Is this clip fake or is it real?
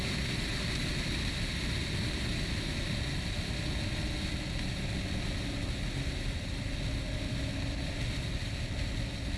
real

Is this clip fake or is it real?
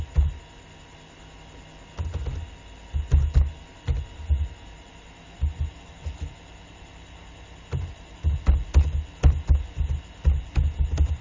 real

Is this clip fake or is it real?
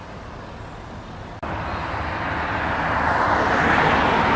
real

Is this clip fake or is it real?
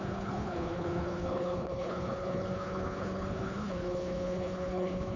fake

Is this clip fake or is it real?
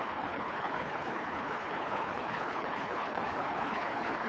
fake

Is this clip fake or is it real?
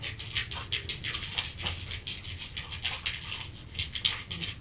real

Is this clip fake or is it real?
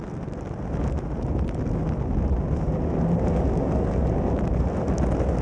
real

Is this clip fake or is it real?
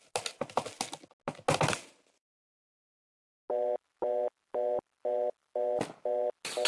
real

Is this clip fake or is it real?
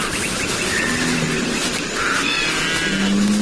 real